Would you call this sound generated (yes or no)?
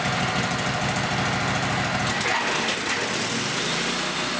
no